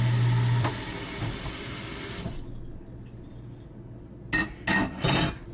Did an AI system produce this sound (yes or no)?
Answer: no